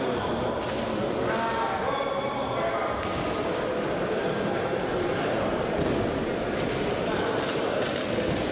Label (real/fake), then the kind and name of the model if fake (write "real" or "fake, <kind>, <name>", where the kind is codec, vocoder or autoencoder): real